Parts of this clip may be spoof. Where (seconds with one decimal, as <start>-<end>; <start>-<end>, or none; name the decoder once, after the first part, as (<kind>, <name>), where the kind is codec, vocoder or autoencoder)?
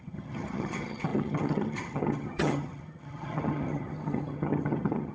0.0-5.1 (vocoder, HiFi-GAN)